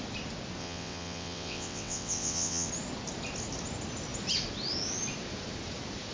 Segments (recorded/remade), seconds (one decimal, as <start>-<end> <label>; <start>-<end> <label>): 0.0-0.6 recorded; 0.6-2.7 remade; 2.7-6.1 recorded

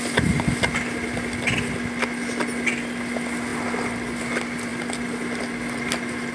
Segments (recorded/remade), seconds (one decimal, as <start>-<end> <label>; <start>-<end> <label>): 0.0-6.3 recorded

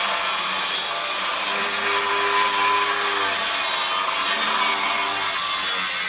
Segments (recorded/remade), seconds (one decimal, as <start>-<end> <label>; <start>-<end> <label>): 0.0-6.1 recorded

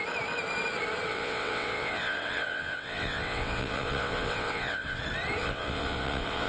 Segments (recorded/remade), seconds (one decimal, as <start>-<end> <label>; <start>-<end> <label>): 0.0-1.1 recorded; 1.1-5.0 remade; 5.0-5.4 recorded; 5.4-6.5 remade